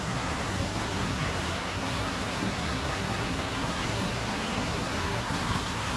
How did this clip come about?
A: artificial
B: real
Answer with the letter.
A